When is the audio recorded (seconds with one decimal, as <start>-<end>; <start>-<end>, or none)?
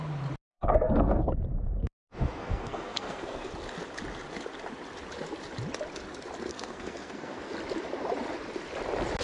0.0-0.5; 1.3-1.8; 3.5-6.5; 7.5-9.2